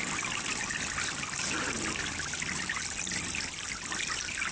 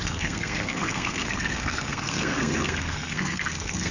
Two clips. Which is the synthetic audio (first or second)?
second